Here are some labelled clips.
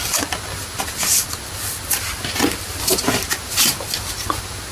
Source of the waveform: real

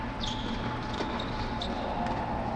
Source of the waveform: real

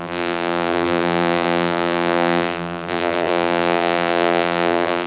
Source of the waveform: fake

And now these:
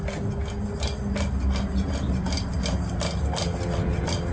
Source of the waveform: real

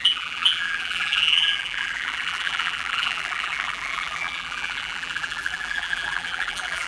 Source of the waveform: fake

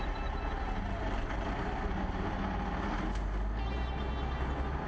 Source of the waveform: real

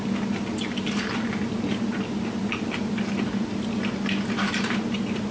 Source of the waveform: real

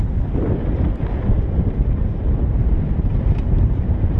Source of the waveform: fake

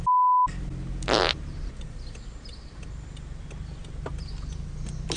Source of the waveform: real